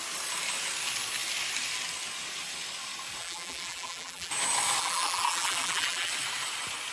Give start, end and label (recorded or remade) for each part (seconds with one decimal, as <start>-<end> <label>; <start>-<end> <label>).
0.0-3.2 recorded; 3.2-4.3 remade; 4.3-4.8 recorded; 4.8-6.1 remade; 6.1-6.9 recorded